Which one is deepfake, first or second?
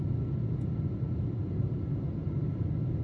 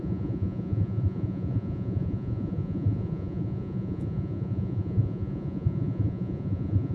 second